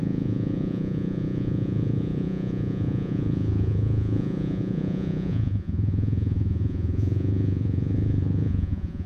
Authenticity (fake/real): fake